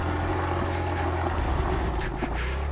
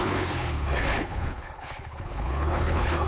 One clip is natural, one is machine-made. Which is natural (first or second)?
first